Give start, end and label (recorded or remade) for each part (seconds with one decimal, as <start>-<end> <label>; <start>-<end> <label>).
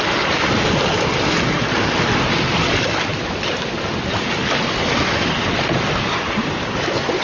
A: 0.0-7.2 recorded